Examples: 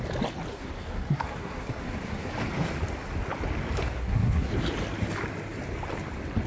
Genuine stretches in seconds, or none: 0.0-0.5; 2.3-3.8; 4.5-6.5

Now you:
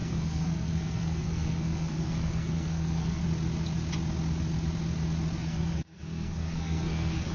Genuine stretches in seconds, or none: 3.2-5.4

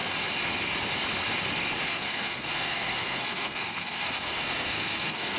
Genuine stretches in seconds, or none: 0.0-1.9

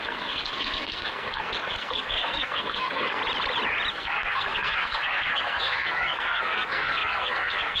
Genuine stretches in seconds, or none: 3.2-3.9